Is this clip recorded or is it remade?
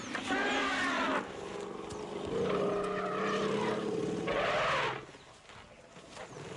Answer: recorded